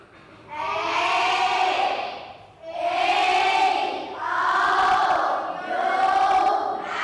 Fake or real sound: real